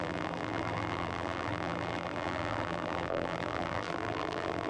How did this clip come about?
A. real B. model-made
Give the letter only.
B